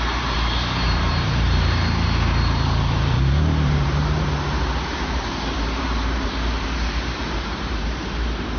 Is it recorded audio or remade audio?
remade